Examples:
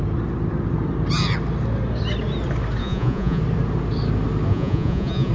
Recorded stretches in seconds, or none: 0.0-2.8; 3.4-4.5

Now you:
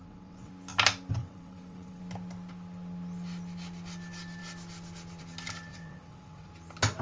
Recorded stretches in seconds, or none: 0.5-1.2; 2.0-5.7; 6.5-7.0

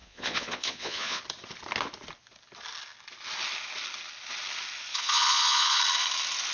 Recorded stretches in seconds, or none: 1.2-4.9; 5.8-6.5